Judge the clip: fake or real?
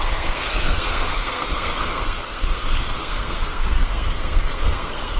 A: fake